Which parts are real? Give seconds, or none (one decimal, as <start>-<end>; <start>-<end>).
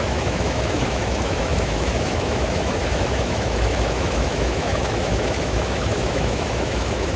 none